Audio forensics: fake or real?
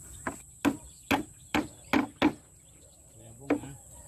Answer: real